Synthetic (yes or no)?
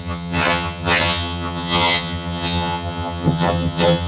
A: yes